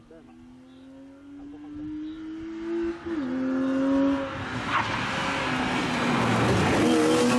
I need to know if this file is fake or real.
real